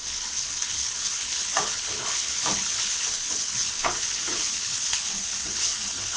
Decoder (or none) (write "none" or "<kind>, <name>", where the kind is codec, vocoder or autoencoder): codec, HILCodec